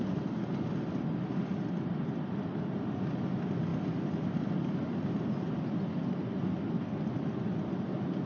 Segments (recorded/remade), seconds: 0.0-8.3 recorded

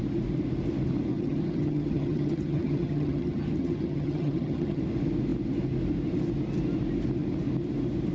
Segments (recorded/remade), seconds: 0.0-1.1 recorded; 1.1-4.8 remade; 4.8-8.1 recorded

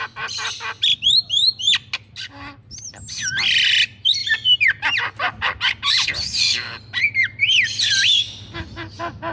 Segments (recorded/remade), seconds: 0.0-9.3 recorded

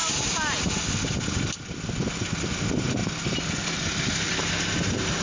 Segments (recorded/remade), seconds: 0.0-5.2 recorded